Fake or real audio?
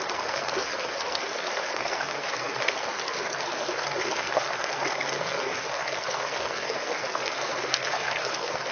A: fake